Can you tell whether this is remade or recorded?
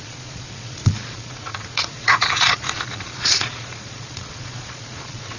remade